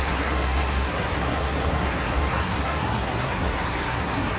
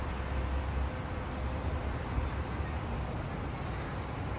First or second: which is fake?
first